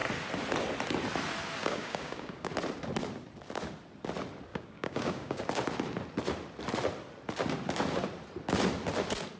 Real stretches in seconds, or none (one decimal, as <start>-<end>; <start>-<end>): 0.0-1.6; 2.5-4.5; 5.4-9.4